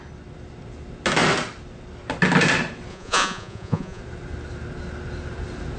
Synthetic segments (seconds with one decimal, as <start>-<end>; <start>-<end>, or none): 2.9-4.0